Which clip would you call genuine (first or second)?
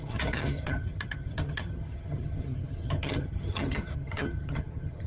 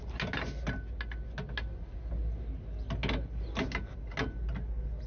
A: second